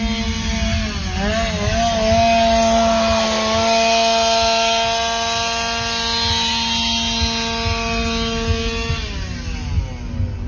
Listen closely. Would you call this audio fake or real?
real